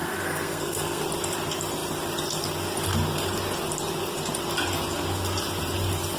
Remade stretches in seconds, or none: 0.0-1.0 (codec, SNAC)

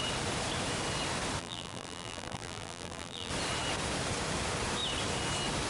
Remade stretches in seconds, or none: 1.4-3.3 (vocoder, BigVGAN v2)

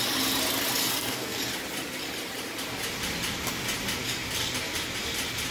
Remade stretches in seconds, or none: 0.8-1.4 (codec, SNAC)

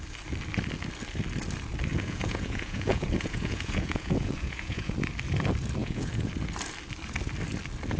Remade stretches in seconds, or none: 1.9-4.9 (vocoder, Vocos); 5.8-6.3